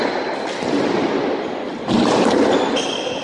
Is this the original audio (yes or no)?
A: yes